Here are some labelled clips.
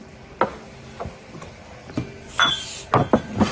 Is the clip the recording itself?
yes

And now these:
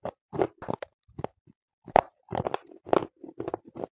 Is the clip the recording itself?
yes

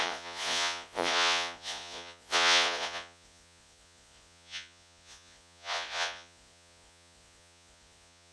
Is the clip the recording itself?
no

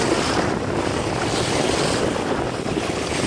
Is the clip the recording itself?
yes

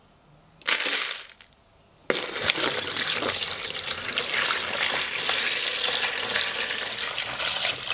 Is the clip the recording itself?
yes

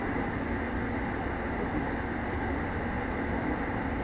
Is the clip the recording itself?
yes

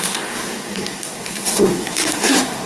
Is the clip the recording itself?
no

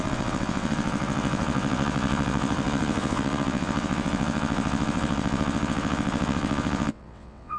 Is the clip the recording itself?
no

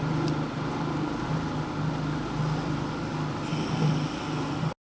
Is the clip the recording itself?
yes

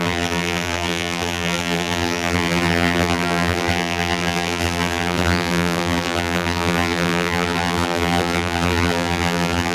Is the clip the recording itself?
no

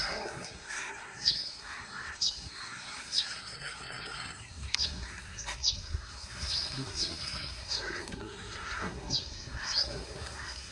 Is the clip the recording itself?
no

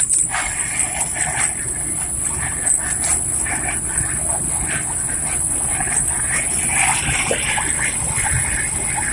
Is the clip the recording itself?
yes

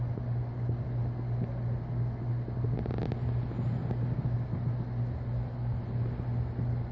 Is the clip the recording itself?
yes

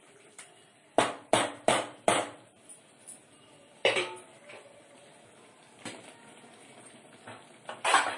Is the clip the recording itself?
no